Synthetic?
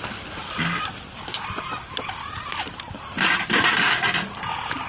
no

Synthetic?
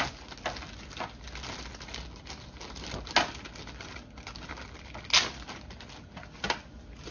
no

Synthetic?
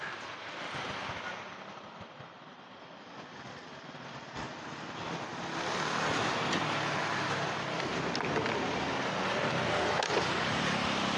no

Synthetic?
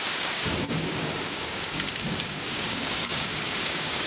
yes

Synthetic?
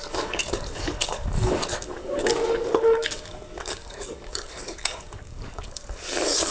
yes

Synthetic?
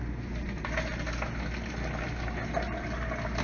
no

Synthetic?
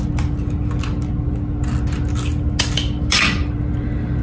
no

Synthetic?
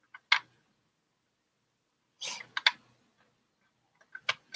no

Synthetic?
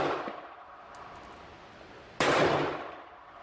no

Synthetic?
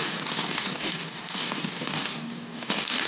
yes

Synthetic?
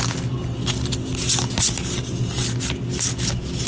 no